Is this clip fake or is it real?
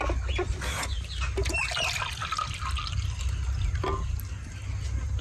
real